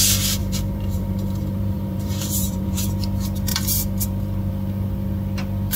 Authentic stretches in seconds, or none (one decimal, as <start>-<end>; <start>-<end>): 0.0-0.4; 2.9-3.5; 4.5-5.8